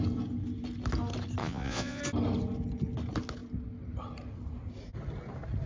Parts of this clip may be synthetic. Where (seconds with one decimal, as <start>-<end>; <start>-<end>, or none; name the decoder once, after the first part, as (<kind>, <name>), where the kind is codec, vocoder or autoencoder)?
1.4-2.0 (vocoder, Vocos)